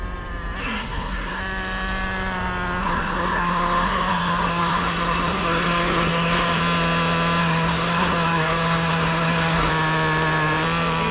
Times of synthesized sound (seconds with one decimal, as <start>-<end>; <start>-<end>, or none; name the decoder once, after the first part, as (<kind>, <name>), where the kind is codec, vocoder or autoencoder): 0.6-1.4 (codec, SNAC); 2.8-6.6; 7.4-9.7